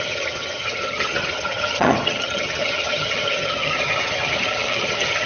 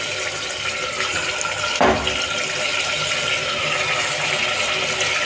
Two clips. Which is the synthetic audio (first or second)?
first